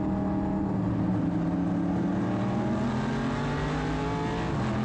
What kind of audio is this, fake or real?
real